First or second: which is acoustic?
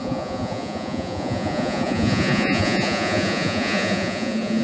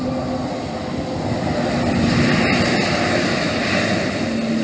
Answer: second